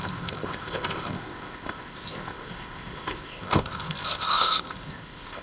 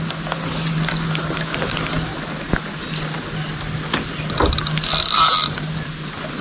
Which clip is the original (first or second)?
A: second